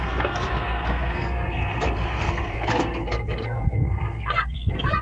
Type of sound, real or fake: fake